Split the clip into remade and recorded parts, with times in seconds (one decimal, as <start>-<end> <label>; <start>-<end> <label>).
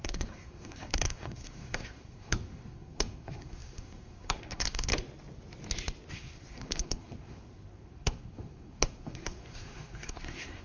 0.0-4.9 remade; 4.9-6.1 recorded; 6.1-10.6 remade